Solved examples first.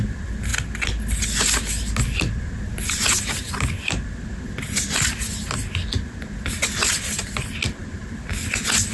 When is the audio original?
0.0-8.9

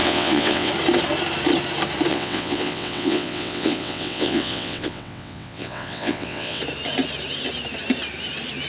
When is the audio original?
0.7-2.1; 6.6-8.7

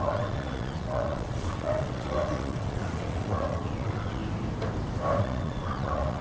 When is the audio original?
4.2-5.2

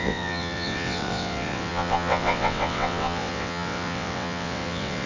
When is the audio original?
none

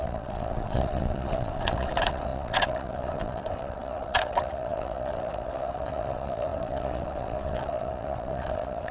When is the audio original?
none

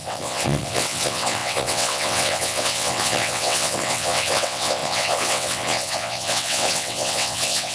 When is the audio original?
none

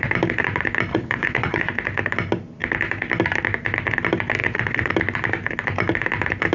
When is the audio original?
0.0-0.9; 1.7-4.4; 4.9-6.5

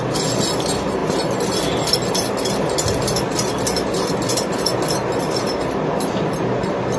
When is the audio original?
0.0-7.0